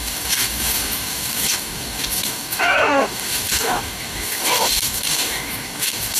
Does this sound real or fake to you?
fake